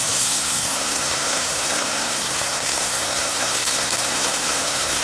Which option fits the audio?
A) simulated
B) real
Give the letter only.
A